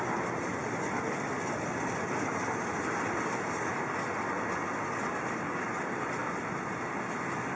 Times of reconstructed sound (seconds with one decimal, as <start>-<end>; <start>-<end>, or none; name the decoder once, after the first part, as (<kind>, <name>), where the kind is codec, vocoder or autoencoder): none